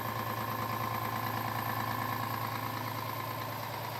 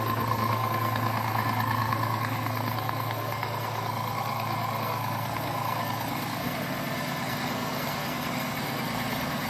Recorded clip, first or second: first